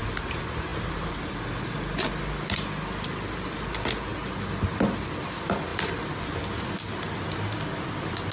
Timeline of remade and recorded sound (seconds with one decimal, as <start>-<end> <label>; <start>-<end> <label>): 0.0-8.3 recorded